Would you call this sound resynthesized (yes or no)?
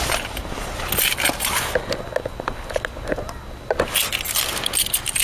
no